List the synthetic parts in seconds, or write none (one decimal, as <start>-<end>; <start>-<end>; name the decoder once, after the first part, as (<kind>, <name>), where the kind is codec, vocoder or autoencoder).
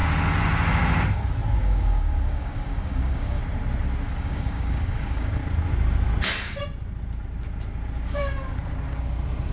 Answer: 1.6-3.4 (codec, DAC); 4.1-5.4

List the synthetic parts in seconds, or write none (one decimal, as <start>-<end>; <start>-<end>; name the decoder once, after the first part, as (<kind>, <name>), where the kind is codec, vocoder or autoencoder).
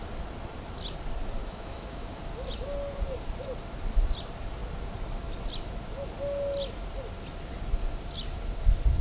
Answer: 1.4-2.2 (autoencoder, DAC-VAE)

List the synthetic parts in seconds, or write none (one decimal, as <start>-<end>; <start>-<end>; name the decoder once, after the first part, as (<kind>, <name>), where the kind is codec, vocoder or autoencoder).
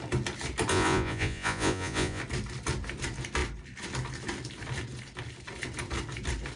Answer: 0.7-2.2 (vocoder, Vocos)